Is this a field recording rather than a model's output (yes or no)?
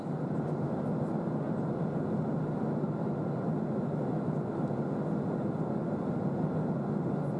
yes